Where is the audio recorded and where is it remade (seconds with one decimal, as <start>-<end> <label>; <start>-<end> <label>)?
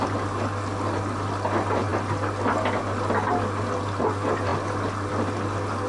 0.0-5.9 recorded